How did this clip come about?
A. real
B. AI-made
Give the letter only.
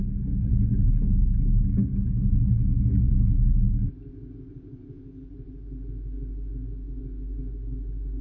A